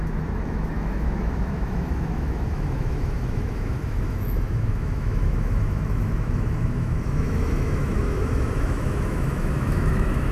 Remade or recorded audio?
remade